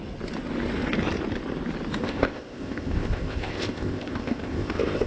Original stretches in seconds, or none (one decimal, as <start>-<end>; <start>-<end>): 0.0-2.0